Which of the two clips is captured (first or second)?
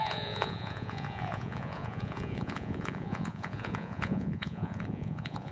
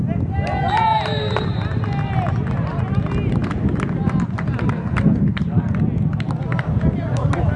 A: second